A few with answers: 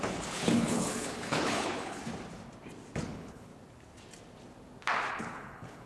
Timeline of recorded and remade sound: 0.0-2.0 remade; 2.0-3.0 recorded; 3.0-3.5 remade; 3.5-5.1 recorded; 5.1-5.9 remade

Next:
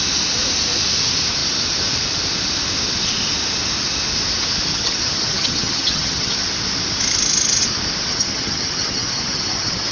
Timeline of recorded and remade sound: 0.0-4.7 recorded; 4.7-6.3 remade; 6.3-8.1 recorded; 8.1-9.9 remade

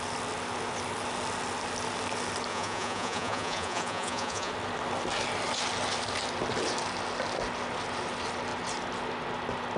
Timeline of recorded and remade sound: 0.0-2.5 recorded; 2.5-4.5 remade; 4.5-9.8 recorded

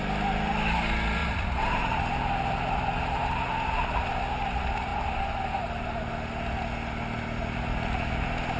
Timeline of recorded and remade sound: 0.0-1.2 recorded; 1.2-4.0 remade; 4.0-4.9 recorded; 4.9-6.1 remade; 6.1-8.6 recorded